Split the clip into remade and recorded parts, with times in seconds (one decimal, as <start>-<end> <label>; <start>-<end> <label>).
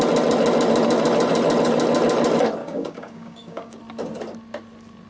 0.0-2.6 recorded; 2.6-3.8 remade; 3.8-5.1 recorded